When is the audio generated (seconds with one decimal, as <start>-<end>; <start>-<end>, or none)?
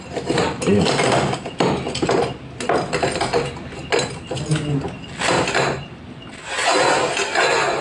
none